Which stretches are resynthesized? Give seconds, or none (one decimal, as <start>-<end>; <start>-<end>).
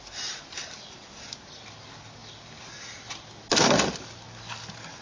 none